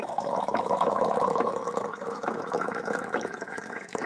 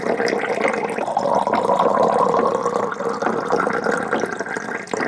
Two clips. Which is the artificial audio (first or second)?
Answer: first